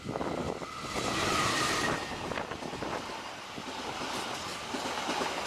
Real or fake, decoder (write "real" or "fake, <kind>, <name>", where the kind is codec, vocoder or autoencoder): real